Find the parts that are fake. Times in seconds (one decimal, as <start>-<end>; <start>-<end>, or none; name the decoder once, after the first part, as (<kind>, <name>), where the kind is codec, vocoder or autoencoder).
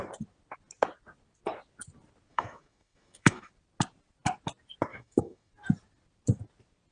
2.3-3.5 (autoencoder, DAC-VAE); 4.9-5.5